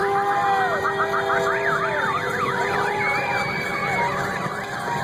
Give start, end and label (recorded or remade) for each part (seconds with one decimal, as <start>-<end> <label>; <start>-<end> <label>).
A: 0.0-0.8 recorded; 0.8-5.0 remade